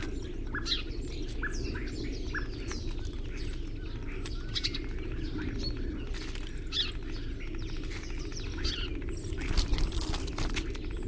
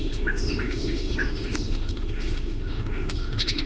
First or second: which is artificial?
second